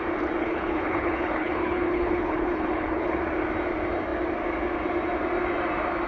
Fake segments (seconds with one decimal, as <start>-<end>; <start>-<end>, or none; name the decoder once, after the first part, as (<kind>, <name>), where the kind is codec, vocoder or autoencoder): 0.4-3.2 (codec, HILCodec)